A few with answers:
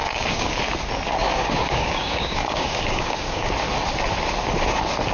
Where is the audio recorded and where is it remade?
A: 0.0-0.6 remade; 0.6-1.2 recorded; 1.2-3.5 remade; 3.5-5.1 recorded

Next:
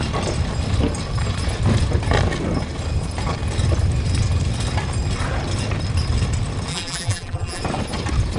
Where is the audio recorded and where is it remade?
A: 0.0-6.7 recorded; 6.7-7.6 remade; 7.6-8.4 recorded

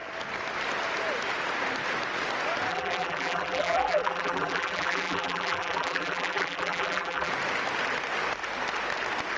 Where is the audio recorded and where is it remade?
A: 0.0-2.7 recorded; 2.7-7.3 remade; 7.3-9.4 recorded

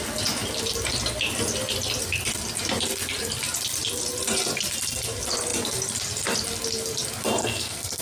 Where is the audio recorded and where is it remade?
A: 0.0-7.4 recorded; 7.4-8.0 remade